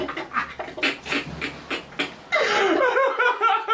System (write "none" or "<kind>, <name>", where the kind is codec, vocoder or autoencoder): none